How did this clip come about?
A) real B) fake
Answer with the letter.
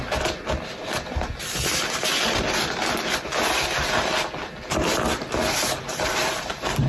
B